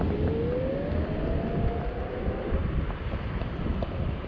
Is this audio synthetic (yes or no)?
no